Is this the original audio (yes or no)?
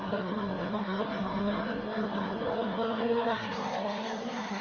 no